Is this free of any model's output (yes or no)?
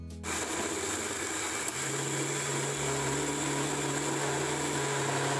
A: yes